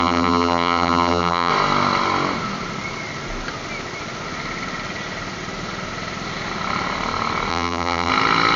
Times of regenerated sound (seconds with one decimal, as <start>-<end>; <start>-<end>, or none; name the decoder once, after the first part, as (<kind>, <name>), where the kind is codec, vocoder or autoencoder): 0.0-1.5 (vocoder, BigVGAN v2); 7.5-8.1